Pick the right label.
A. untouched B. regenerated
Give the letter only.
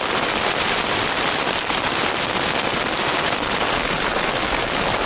A